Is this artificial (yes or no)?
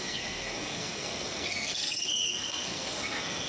yes